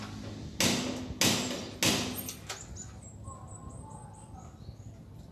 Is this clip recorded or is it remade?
recorded